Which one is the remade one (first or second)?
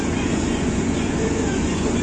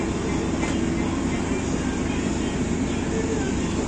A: first